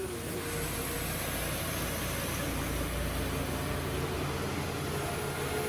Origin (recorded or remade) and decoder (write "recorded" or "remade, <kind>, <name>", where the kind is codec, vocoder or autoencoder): recorded